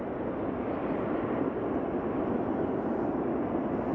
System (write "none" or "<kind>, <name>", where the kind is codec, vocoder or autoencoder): none